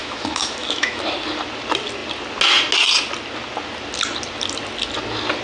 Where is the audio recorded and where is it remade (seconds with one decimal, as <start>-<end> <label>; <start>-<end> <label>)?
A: 0.0-1.0 remade; 1.0-5.4 recorded

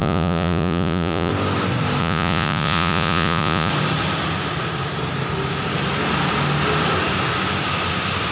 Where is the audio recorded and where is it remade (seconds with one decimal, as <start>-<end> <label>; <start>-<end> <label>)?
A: 0.0-1.3 remade; 1.3-2.0 recorded; 2.0-3.7 remade; 3.7-8.3 recorded

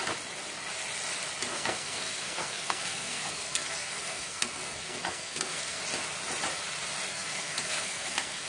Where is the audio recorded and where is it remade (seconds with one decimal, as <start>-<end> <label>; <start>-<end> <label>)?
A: 0.0-1.5 recorded; 1.5-5.8 remade; 5.8-7.1 recorded; 7.1-8.5 remade

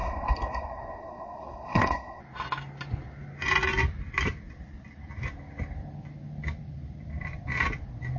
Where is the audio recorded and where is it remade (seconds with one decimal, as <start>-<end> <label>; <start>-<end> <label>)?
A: 0.0-2.2 remade; 2.2-8.2 recorded

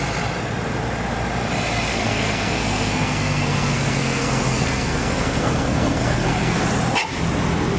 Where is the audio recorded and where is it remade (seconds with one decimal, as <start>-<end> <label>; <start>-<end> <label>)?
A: 0.0-1.9 recorded; 1.9-6.6 remade; 6.6-7.8 recorded

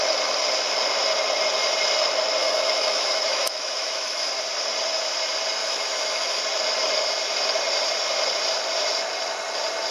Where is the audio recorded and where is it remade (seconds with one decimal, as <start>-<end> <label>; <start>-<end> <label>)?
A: 0.0-2.4 recorded; 2.4-4.3 remade; 4.3-5.6 recorded; 5.6-6.4 remade; 6.4-9.9 recorded

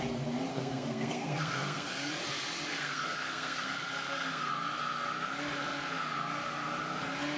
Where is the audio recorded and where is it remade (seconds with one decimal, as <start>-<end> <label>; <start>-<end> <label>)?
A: 0.0-0.5 recorded; 0.5-2.1 remade; 2.1-2.7 recorded; 2.7-4.5 remade; 4.5-7.4 recorded

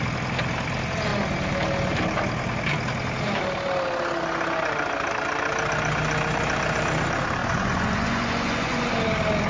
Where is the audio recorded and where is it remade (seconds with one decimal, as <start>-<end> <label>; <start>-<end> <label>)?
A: 0.0-7.4 recorded; 7.4-8.9 remade; 8.9-9.5 recorded